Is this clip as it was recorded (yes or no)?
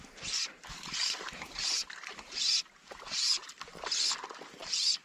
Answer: no